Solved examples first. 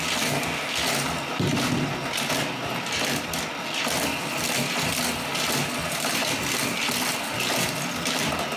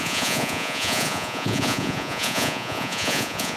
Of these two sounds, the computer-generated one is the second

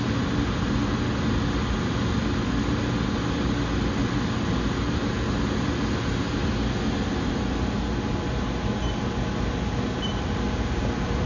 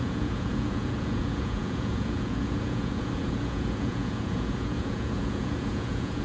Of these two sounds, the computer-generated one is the second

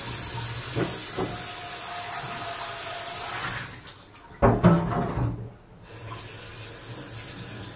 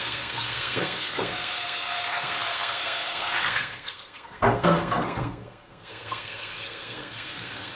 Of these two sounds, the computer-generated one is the second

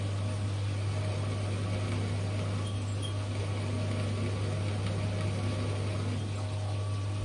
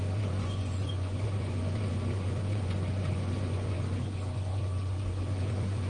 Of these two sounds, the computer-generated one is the second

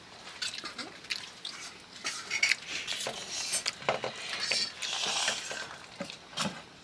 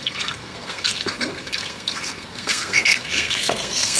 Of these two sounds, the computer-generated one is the second